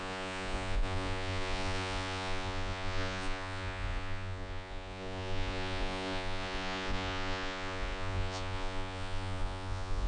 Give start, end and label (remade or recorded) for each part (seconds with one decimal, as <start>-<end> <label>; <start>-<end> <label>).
0.0-10.1 remade

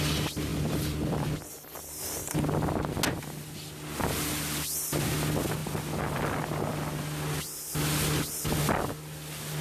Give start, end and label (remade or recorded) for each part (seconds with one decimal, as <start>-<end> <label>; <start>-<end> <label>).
0.0-0.5 recorded; 0.5-2.3 remade; 2.3-9.6 recorded

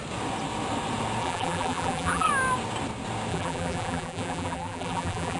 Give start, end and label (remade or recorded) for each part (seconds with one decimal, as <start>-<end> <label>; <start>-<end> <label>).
0.0-1.2 recorded; 1.2-2.3 remade; 2.3-3.3 recorded; 3.3-5.4 remade

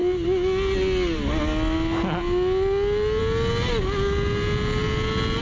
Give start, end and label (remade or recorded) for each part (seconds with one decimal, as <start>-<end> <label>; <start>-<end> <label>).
0.0-5.4 recorded